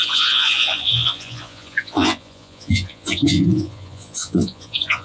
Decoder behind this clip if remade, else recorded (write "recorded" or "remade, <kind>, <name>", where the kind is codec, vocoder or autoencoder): remade, vocoder, Vocos